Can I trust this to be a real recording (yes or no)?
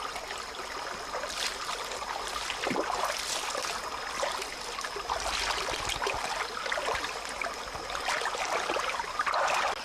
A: yes